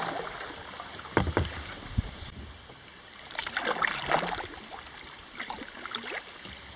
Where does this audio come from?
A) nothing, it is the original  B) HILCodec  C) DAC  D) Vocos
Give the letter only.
A